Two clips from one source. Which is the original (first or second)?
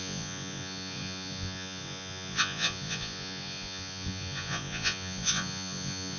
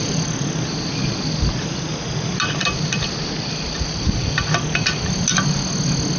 second